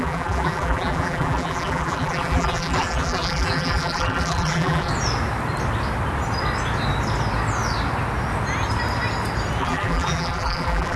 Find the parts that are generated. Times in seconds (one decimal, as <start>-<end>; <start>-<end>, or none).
0.0-4.9; 9.6-11.0